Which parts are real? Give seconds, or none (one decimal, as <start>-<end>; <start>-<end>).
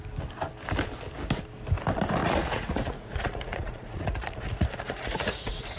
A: 0.0-2.2